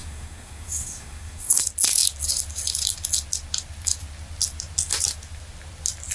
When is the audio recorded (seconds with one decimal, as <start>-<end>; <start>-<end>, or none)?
1.6-6.1